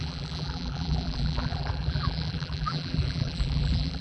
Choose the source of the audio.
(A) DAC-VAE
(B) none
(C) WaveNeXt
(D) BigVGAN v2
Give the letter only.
D